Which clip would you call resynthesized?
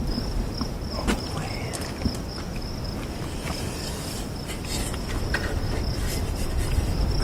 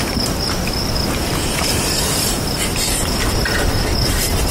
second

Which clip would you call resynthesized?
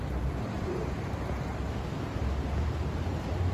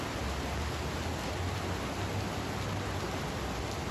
first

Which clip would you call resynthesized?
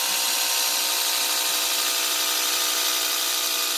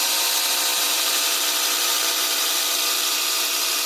second